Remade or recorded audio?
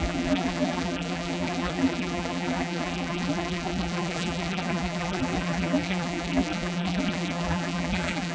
remade